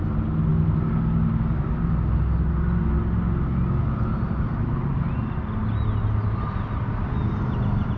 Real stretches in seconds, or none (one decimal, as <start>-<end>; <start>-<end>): 0.0-8.0